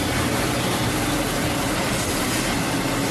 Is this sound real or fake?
real